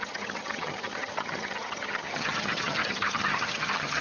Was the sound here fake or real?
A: fake